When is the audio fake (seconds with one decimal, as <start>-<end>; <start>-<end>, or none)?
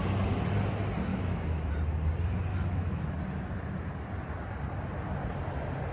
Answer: 1.1-1.7; 2.5-3.1